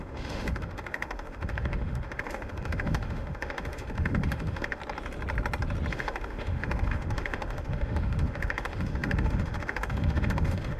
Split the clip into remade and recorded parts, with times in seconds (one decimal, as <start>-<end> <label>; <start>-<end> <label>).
0.0-4.8 remade; 4.8-5.9 recorded; 5.9-10.8 remade